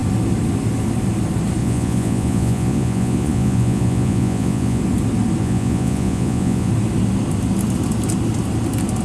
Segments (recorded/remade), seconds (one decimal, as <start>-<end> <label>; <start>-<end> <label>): 0.0-1.6 recorded; 1.6-4.8 remade; 4.8-5.4 recorded; 5.4-6.7 remade; 6.7-9.0 recorded